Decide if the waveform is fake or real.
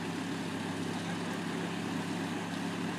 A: real